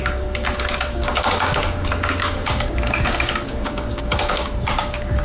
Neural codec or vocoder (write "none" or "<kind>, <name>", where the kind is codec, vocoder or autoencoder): codec, DAC